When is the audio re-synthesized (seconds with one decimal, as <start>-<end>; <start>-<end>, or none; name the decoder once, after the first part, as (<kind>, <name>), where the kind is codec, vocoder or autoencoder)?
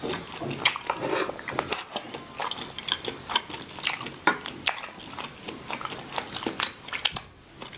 none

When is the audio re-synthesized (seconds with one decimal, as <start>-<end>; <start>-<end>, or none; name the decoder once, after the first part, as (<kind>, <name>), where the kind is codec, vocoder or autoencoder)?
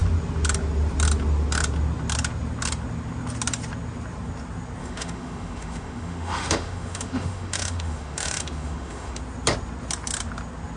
4.8-9.2 (autoencoder, DAC-VAE)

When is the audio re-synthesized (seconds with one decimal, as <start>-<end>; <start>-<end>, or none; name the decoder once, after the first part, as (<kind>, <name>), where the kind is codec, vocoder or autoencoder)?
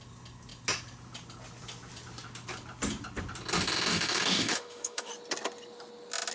3.9-5.1 (autoencoder, DAC-VAE)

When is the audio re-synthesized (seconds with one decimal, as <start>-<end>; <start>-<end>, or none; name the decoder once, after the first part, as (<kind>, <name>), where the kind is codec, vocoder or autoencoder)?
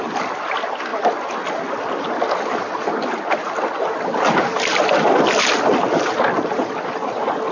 none